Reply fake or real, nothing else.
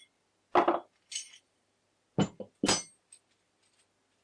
real